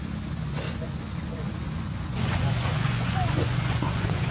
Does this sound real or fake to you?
fake